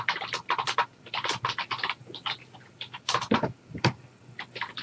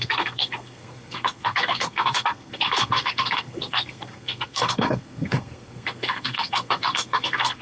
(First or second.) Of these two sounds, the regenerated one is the second